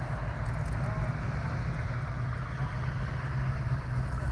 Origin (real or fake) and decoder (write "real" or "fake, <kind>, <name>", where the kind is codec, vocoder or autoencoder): real